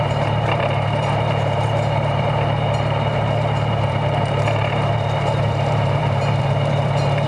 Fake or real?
fake